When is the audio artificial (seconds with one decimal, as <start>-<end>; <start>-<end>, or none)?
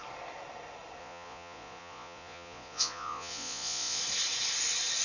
1.0-4.0